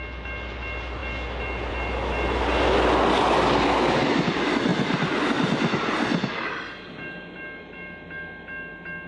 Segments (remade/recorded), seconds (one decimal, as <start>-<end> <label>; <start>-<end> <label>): 0.0-9.1 recorded